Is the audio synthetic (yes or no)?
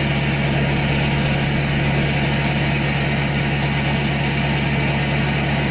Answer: no